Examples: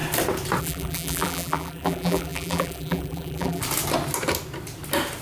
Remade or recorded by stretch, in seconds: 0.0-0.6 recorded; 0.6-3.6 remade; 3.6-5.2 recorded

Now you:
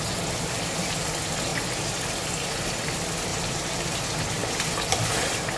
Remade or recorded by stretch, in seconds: 0.0-3.3 recorded; 3.3-4.0 remade; 4.0-5.6 recorded

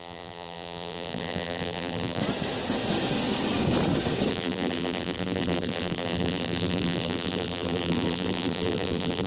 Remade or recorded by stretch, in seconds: 0.0-2.2 remade; 2.2-4.3 recorded; 4.3-9.3 remade

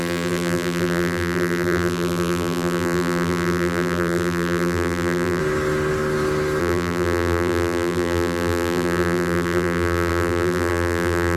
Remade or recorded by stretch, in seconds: 0.0-5.4 remade; 5.4-6.6 recorded; 6.6-11.4 remade

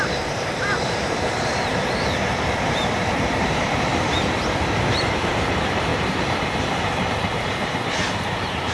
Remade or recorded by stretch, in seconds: 0.0-3.9 remade; 3.9-4.9 recorded; 4.9-8.7 remade

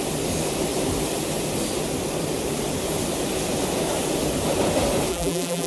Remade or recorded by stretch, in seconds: 0.0-5.1 recorded; 5.1-5.7 remade

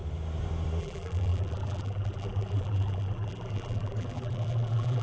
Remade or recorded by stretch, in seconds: 0.0-0.8 recorded; 0.8-5.0 remade

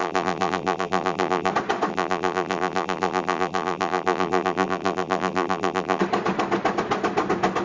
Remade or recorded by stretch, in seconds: 0.0-1.5 remade; 1.5-1.9 recorded; 1.9-6.0 remade; 6.0-7.6 recorded